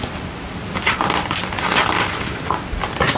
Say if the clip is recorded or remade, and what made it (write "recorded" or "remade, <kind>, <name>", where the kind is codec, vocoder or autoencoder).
recorded